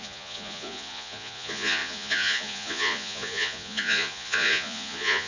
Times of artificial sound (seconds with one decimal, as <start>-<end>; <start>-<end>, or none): 0.0-5.3